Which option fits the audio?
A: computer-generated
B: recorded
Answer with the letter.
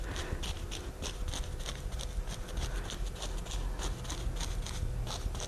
B